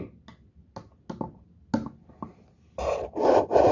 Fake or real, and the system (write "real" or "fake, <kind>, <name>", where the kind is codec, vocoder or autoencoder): real